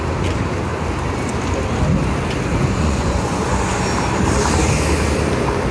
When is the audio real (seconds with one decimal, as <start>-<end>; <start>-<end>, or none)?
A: 0.0-2.5; 3.8-5.7